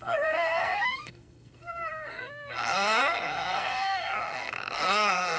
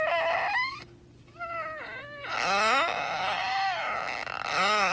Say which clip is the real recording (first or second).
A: second